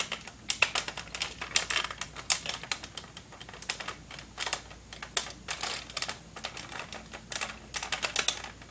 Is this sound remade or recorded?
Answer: recorded